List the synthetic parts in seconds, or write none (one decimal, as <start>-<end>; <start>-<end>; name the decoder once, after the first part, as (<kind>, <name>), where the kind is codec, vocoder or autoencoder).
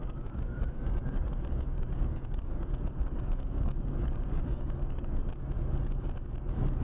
0.0-5.2 (codec, DAC)